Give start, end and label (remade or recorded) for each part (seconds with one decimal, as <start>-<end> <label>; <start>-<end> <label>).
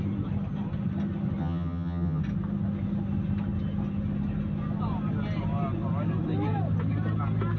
0.0-1.4 recorded; 1.4-2.2 remade; 2.2-7.6 recorded